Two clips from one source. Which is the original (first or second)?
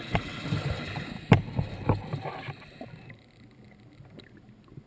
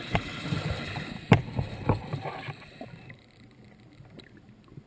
first